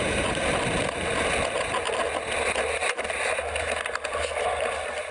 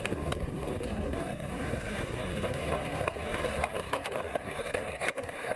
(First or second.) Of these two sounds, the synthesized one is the second